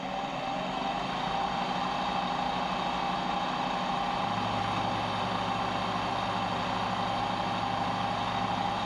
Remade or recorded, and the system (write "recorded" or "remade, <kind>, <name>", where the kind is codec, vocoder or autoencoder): recorded